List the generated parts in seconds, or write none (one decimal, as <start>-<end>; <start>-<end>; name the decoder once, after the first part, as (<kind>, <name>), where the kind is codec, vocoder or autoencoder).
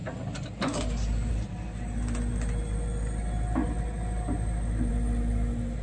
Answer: none